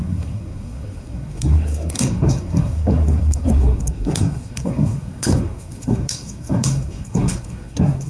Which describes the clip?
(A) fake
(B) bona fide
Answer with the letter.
A